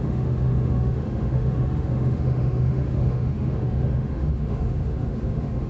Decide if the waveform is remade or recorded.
remade